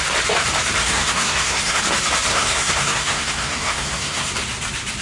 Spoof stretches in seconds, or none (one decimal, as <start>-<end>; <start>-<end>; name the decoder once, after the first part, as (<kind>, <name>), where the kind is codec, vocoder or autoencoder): 0.8-1.8 (codec, SNAC); 2.3-4.3